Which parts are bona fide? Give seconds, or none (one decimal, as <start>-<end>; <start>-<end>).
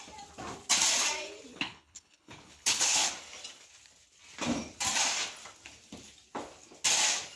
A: 0.0-1.5; 3.1-7.4